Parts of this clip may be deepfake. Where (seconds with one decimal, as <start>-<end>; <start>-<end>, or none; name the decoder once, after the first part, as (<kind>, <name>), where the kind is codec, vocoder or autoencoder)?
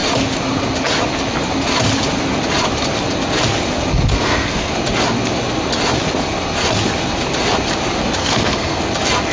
3.9-4.7 (codec, SNAC); 8.2-8.8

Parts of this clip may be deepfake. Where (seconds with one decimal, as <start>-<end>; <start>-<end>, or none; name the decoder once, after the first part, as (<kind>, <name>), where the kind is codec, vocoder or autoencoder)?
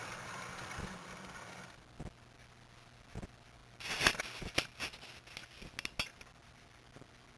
none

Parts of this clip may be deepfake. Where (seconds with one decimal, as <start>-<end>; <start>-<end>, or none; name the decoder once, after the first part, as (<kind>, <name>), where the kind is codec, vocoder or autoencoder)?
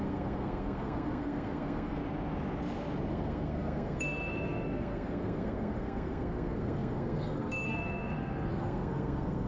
0.0-2.0 (codec, SNAC); 3.1-9.5